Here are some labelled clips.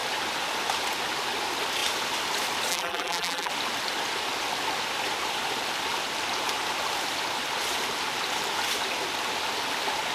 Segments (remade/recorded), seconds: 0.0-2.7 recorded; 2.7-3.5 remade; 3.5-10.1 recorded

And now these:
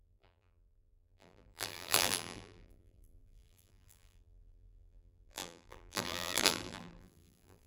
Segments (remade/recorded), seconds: 0.0-7.7 remade

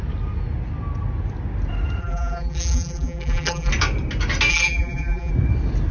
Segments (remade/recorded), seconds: 0.0-2.0 recorded; 2.0-3.7 remade; 3.7-4.5 recorded; 4.5-5.3 remade; 5.3-5.9 recorded